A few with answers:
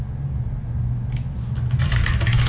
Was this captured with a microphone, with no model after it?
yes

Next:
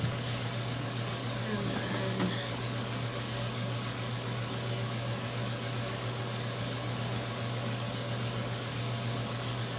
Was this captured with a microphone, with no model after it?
no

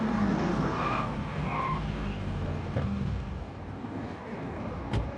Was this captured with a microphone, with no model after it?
no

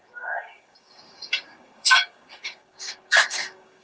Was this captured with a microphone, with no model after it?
no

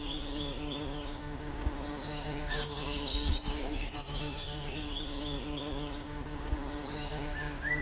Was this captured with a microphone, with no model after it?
no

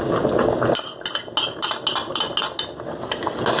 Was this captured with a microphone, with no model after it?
yes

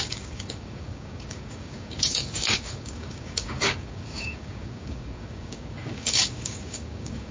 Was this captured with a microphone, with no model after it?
no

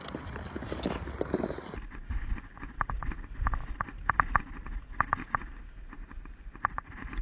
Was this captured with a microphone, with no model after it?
yes